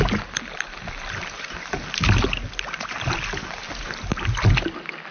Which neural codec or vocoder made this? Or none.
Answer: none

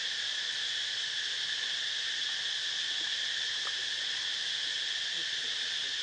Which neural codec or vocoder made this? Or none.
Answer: none